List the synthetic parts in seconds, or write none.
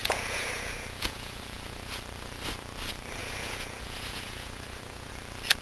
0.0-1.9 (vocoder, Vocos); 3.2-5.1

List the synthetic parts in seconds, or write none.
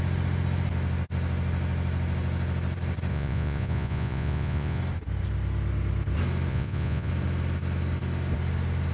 3.1-4.8 (vocoder, Vocos); 6.5-7.1